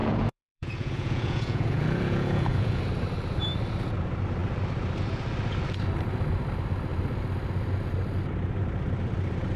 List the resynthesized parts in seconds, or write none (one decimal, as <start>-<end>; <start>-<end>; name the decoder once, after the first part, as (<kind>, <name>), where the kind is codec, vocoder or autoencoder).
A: 0.0-2.8 (vocoder, Vocos)